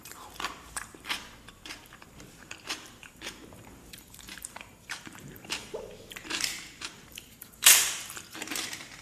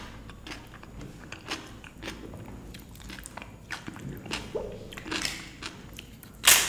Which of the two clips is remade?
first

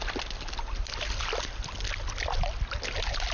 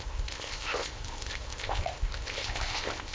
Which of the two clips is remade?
second